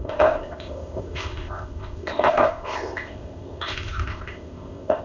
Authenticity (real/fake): fake